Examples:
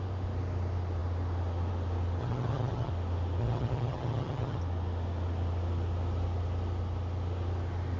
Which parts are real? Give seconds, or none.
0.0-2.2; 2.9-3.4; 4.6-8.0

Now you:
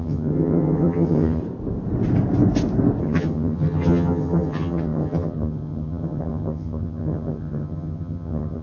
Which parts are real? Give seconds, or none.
1.4-3.0

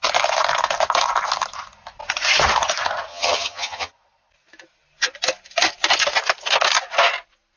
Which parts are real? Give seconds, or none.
0.0-3.1; 3.9-7.6

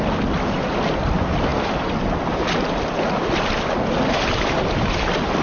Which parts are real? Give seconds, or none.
0.0-5.4

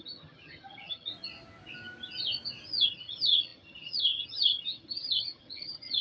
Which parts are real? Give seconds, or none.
1.1-2.9

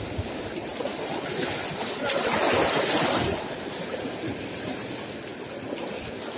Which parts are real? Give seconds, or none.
0.0-6.4